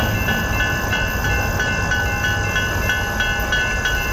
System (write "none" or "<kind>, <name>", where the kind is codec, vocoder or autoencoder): none